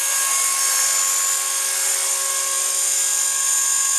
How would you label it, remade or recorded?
recorded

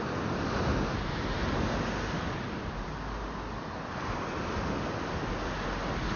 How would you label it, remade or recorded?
recorded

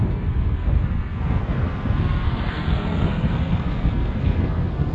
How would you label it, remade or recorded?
remade